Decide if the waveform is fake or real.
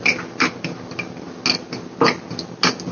real